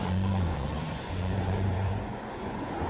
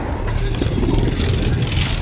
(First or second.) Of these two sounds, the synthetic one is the first